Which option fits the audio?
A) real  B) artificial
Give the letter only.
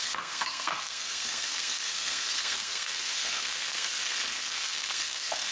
B